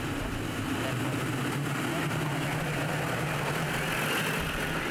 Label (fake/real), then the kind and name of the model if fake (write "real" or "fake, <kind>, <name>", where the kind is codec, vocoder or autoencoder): real